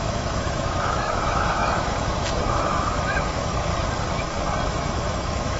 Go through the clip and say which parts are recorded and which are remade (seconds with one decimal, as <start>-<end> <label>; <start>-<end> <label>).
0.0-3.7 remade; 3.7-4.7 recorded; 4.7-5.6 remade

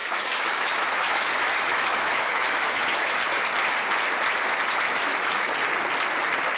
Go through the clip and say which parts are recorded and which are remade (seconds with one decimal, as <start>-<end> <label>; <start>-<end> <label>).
0.0-3.4 remade; 3.4-4.7 recorded; 4.7-5.5 remade; 5.5-6.6 recorded

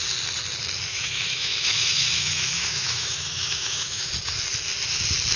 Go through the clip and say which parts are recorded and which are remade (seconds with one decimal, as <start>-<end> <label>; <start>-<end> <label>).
0.0-0.9 recorded; 0.9-4.1 remade; 4.1-5.4 recorded